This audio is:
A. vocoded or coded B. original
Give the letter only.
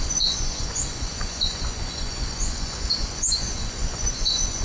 A